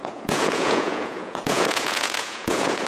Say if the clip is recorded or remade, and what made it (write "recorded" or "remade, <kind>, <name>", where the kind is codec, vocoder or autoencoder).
remade, vocoder, Vocos